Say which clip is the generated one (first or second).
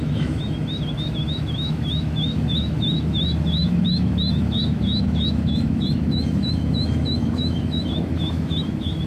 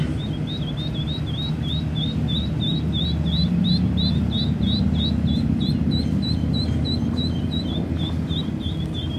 first